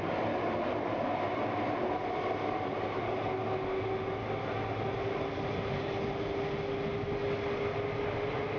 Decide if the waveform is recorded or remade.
recorded